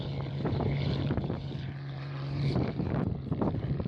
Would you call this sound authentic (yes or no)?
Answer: no